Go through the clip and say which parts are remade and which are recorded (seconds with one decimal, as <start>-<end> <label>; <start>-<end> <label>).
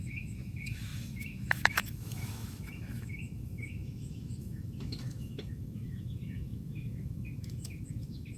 0.0-8.4 remade